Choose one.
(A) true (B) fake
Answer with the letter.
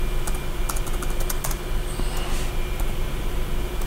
A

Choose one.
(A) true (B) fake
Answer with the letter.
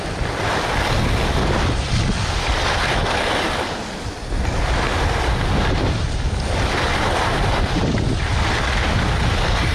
A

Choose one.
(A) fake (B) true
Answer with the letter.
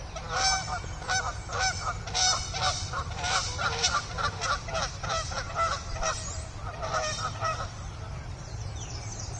A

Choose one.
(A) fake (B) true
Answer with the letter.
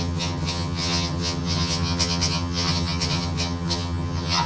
A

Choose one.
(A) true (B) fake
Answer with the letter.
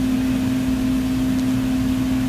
A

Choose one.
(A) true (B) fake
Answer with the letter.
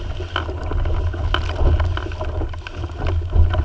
A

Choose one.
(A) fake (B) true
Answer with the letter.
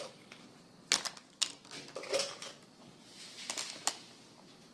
B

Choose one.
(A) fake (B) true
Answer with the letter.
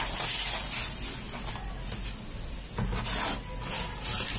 B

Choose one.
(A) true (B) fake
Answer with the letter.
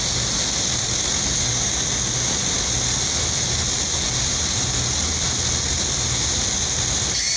A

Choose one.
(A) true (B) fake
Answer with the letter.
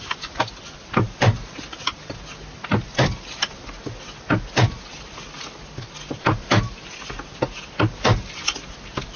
A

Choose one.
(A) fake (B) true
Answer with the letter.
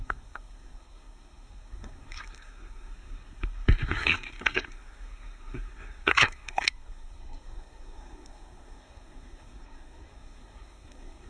A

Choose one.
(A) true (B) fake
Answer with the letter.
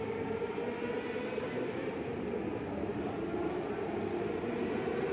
A